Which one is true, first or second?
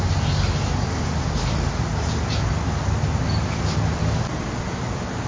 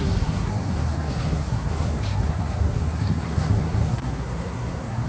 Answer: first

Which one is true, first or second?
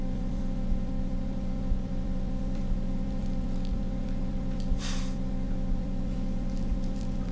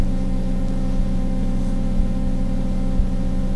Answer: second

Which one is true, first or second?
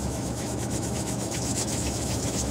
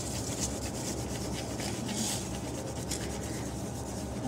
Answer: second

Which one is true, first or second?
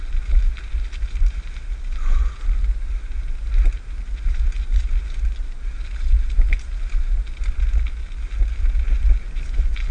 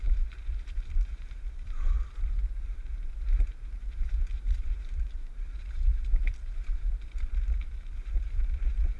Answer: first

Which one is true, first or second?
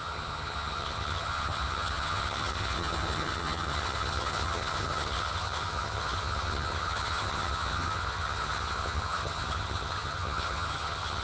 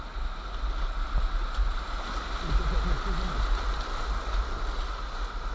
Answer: second